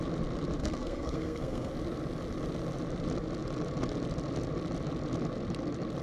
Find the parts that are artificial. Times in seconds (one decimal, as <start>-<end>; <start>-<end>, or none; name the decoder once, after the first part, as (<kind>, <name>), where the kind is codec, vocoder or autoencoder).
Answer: 0.6-1.7 (codec, SNAC)